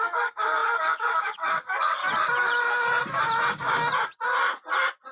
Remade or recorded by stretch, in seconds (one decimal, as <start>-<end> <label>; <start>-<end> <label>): 0.0-2.0 remade; 2.0-2.6 recorded; 2.6-3.0 remade; 3.0-5.1 recorded